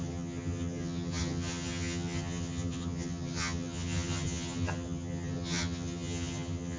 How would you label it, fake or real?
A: fake